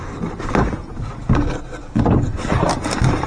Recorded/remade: recorded